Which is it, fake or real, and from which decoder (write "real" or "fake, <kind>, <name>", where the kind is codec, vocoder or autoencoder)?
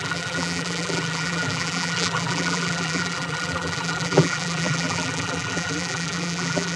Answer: fake, vocoder, BigVGAN v2